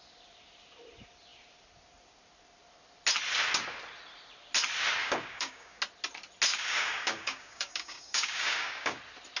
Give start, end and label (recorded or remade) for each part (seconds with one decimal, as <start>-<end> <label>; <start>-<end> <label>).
0.0-5.0 recorded; 5.0-5.8 remade; 5.8-6.5 recorded; 6.5-9.0 remade; 9.0-9.4 recorded